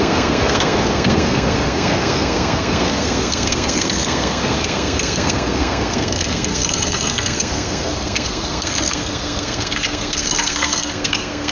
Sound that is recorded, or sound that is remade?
remade